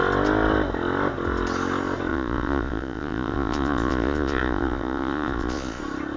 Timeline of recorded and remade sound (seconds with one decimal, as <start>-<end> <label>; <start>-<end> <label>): 0.0-2.1 recorded; 2.1-5.8 remade; 5.8-6.2 recorded